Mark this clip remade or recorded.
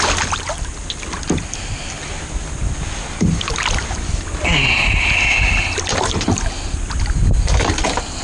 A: recorded